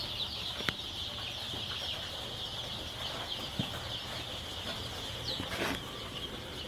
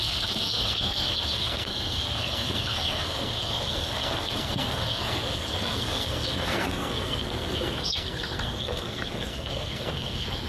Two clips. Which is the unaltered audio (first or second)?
first